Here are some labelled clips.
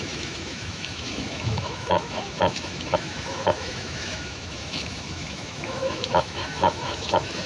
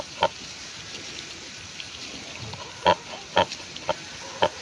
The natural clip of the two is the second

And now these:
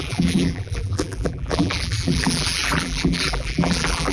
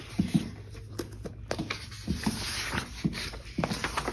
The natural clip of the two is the second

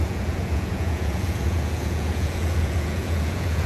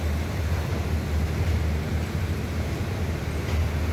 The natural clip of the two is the second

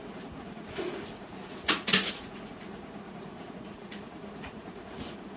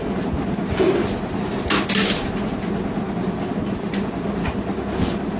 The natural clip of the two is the second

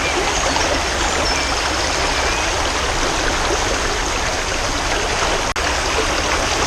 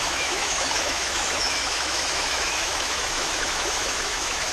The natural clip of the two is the first